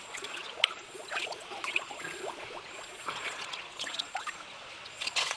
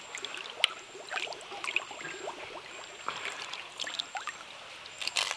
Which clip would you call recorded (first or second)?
second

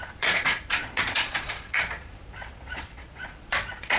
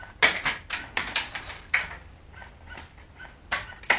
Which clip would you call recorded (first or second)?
second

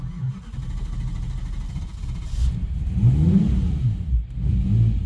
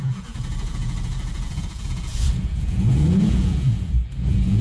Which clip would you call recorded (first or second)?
first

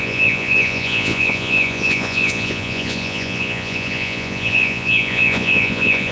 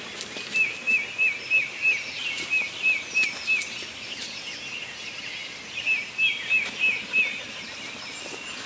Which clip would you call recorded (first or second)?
second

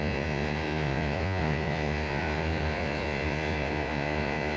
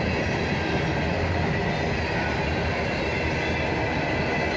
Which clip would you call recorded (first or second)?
second